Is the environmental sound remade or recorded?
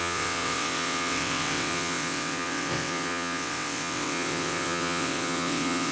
remade